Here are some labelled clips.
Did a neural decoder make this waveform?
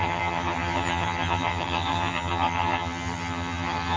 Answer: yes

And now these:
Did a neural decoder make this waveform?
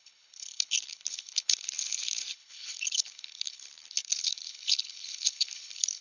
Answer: yes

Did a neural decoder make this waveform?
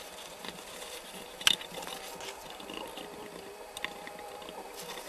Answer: no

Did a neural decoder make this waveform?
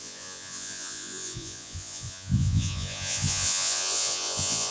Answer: yes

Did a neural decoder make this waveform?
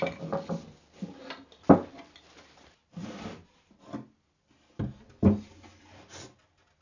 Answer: no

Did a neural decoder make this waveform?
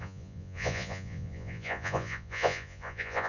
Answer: yes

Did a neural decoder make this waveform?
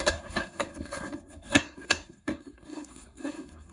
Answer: yes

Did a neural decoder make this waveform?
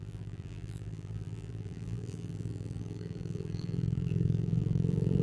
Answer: yes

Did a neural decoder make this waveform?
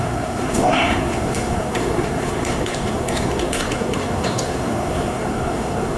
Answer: yes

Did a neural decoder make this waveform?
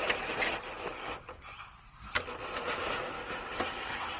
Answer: no